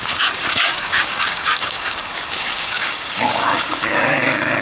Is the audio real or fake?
fake